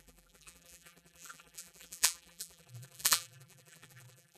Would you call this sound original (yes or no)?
no